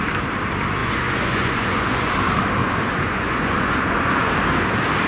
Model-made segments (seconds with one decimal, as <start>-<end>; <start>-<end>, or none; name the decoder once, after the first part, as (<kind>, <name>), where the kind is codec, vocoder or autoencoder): 0.8-2.1 (vocoder, Vocos); 2.6-4.3

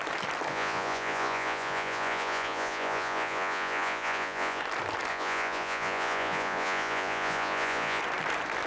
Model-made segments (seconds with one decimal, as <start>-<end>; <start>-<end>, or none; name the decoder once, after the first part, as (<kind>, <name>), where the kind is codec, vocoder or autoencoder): 0.5-4.6 (vocoder, Vocos); 5.1-8.0